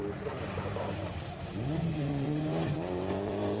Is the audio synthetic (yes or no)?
yes